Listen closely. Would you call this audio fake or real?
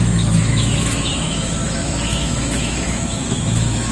fake